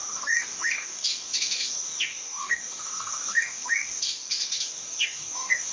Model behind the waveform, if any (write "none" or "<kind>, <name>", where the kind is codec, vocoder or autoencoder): codec, DAC